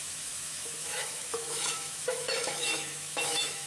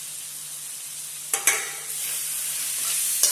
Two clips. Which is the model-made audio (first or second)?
first